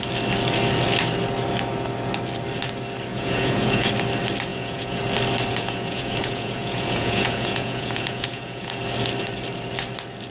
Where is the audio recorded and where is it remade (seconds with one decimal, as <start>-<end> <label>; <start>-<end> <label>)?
0.0-3.1 recorded; 3.1-3.9 remade; 3.9-4.5 recorded; 4.5-5.0 remade; 5.0-5.5 recorded; 5.5-8.8 remade; 8.8-10.3 recorded